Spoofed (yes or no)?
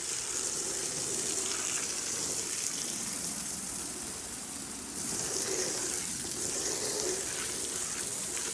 yes